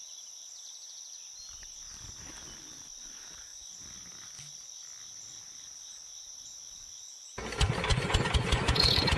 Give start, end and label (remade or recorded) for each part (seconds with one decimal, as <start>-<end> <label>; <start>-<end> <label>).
0.0-7.9 recorded; 7.9-9.2 remade